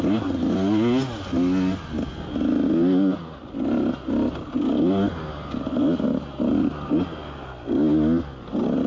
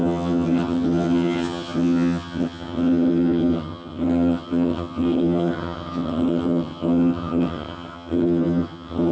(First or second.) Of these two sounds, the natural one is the first